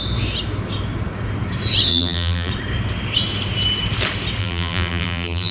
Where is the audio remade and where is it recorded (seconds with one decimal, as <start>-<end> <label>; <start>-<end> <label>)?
0.0-1.9 recorded; 1.9-2.5 remade; 2.5-4.4 recorded; 4.4-5.5 remade